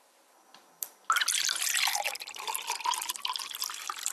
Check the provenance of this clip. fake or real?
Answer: real